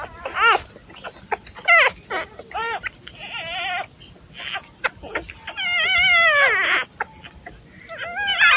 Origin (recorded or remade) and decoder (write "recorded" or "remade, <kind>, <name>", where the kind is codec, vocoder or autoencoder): recorded